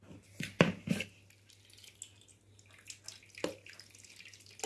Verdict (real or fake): real